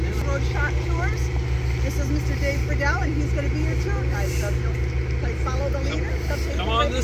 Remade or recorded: recorded